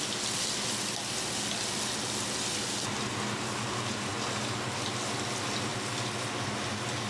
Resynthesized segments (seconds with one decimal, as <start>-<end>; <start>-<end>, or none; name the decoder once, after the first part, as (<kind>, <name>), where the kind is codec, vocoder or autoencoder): none